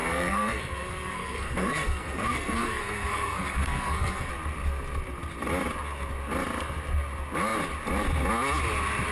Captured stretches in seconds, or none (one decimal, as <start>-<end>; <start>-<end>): 4.3-9.1